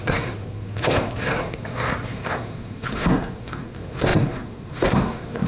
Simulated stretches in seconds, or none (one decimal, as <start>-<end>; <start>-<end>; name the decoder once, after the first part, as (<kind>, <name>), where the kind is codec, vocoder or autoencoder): 0.0-5.5 (codec, SNAC)